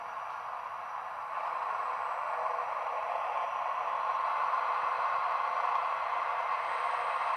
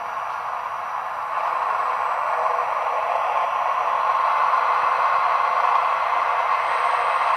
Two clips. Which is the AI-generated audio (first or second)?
first